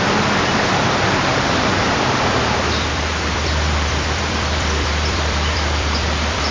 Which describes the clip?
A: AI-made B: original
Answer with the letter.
A